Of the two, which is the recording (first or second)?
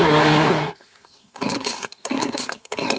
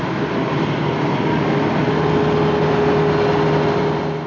second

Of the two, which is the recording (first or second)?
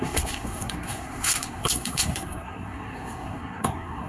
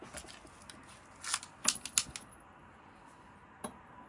second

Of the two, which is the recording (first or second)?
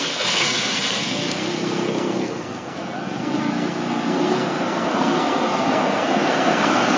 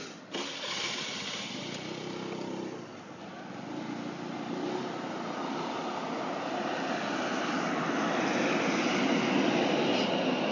second